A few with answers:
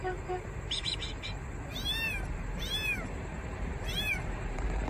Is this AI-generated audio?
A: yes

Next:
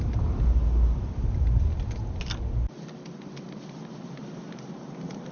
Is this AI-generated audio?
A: no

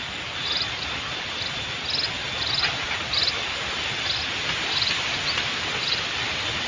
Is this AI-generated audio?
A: no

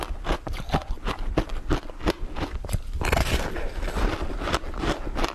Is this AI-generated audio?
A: no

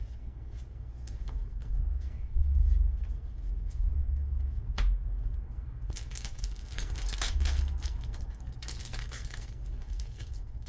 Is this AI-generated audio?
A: yes